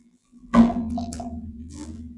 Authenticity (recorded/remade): remade